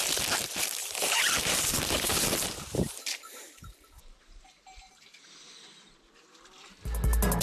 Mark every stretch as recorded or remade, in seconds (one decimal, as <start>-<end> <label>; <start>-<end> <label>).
0.0-0.8 recorded; 0.8-4.9 remade; 4.9-7.4 recorded